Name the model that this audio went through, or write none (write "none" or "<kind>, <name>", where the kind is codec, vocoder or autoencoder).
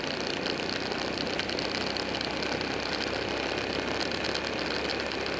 none